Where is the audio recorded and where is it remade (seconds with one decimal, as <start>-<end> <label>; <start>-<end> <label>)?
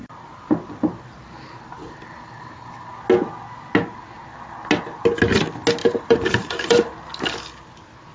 0.0-2.9 remade; 2.9-5.8 recorded; 5.8-6.9 remade; 6.9-8.1 recorded